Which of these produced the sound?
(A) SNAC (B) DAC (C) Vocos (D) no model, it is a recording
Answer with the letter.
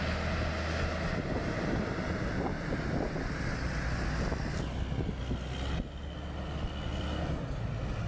D